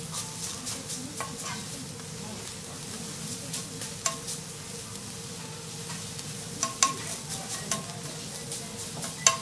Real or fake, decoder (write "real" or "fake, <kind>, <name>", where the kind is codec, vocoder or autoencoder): real